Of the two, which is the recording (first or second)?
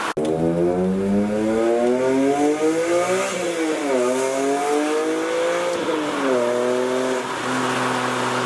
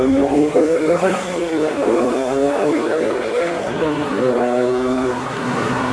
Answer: first